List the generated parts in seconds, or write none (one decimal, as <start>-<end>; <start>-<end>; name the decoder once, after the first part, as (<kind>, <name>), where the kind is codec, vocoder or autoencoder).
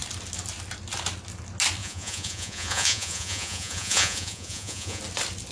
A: 1.8-5.0 (vocoder, Vocos)